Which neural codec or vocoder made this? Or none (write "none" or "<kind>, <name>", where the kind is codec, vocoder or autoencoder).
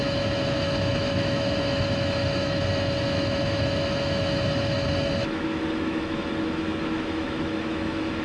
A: autoencoder, DAC-VAE